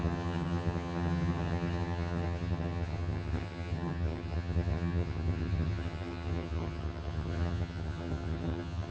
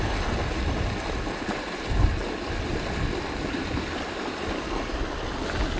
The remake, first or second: first